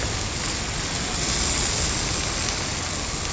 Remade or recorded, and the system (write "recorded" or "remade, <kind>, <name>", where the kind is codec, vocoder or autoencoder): recorded